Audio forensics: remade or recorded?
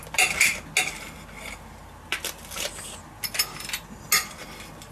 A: recorded